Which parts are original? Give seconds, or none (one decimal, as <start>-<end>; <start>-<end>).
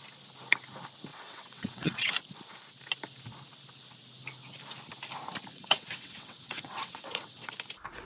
0.0-1.1; 2.1-5.5; 7.5-8.1